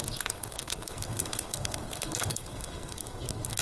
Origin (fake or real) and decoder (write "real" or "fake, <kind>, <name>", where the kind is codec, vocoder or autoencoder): fake, codec, SNAC